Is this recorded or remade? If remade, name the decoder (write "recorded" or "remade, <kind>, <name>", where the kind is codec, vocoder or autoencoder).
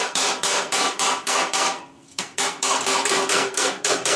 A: remade, codec, SNAC